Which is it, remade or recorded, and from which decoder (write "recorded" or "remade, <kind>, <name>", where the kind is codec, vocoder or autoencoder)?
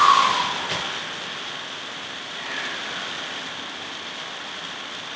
recorded